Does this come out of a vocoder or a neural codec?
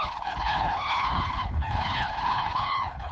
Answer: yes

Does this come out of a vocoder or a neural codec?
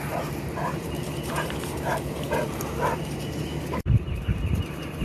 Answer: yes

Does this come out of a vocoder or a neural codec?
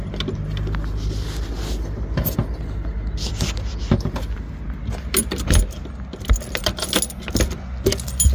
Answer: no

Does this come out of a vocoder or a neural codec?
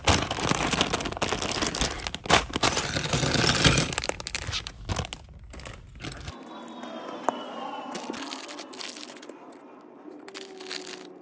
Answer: no